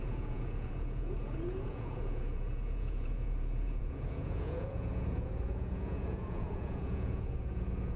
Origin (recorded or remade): remade